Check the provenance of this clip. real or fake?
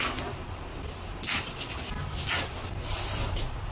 real